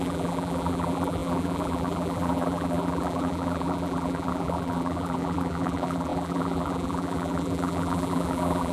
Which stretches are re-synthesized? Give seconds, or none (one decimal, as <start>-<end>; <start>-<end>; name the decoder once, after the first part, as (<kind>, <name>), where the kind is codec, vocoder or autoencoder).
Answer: 0.0-8.7 (vocoder, BigVGAN v2)